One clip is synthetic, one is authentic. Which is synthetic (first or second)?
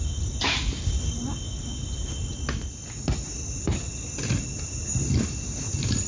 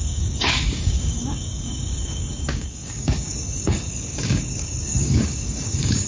second